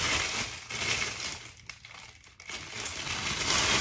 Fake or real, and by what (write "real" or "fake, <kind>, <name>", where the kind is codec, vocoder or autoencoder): real